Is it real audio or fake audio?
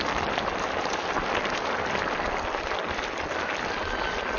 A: real